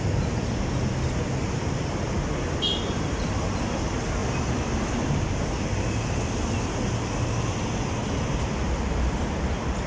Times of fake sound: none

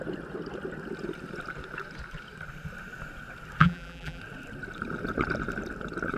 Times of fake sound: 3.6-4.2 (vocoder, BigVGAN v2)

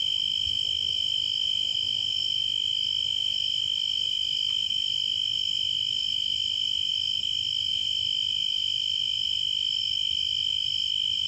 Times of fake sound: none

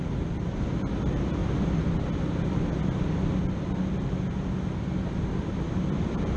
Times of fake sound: 0.0-1.4 (vocoder, BigVGAN v2); 5.2-6.4

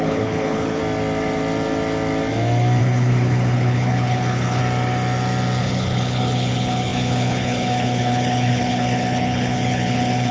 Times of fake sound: 0.0-0.8 (codec, HILCodec); 2.8-4.6; 5.6-10.3

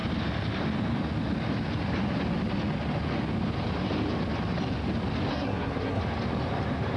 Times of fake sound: 5.3-6.0 (codec, SNAC)